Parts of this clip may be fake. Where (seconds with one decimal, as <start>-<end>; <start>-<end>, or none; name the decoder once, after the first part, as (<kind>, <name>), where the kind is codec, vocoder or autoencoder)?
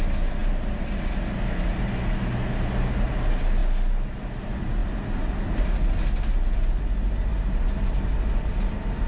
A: 7.3-9.1 (vocoder, BigVGAN v2)